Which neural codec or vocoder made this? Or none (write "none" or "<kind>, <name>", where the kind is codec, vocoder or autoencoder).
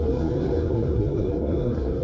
codec, SNAC